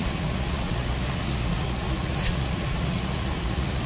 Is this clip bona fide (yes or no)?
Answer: no